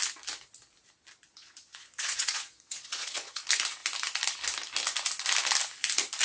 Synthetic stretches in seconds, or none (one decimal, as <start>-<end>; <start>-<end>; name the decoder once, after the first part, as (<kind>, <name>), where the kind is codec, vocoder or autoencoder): 1.3-3.4 (vocoder, Vocos)